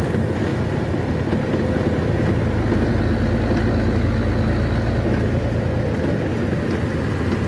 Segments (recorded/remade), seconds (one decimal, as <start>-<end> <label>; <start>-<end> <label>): 0.0-7.5 recorded